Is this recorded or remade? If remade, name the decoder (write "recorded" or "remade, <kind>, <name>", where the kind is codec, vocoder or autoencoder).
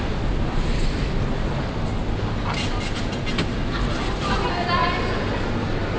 recorded